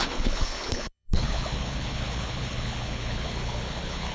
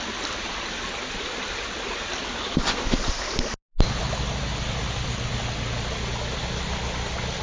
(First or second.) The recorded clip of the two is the second